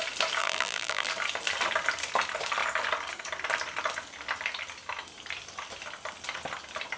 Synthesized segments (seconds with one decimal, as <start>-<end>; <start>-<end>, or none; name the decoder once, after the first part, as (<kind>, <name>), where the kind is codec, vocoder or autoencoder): 0.4-1.1 (vocoder, BigVGAN v2)